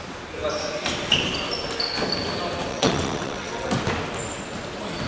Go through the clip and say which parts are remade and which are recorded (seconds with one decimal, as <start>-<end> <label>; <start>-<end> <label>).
0.0-2.7 recorded; 2.7-3.7 remade; 3.7-5.1 recorded